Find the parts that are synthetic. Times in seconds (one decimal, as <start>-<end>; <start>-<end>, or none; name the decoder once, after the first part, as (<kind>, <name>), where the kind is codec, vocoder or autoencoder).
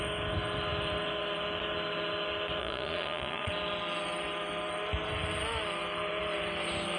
2.6-3.5 (vocoder, Vocos)